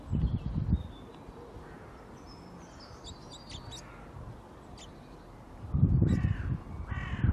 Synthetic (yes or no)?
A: no